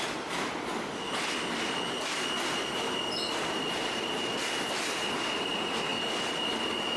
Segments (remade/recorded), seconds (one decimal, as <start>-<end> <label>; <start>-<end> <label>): 0.0-7.0 recorded